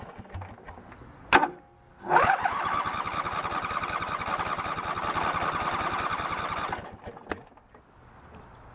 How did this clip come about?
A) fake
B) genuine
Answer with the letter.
B